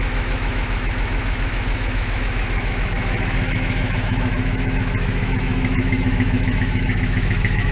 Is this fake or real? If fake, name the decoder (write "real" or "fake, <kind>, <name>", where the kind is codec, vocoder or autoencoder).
fake, autoencoder, DAC-VAE